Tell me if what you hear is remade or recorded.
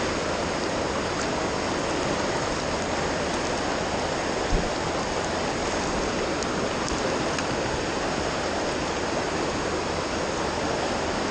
recorded